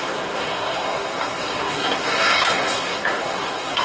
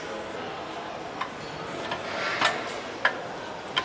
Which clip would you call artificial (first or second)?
first